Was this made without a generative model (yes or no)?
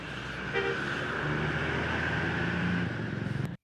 yes